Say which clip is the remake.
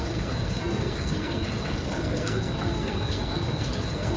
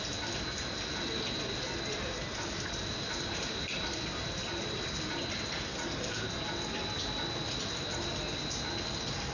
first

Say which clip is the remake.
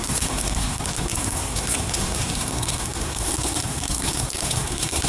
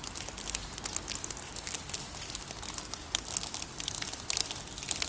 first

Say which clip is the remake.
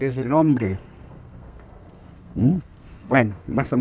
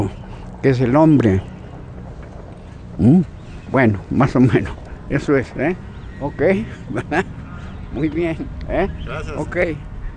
first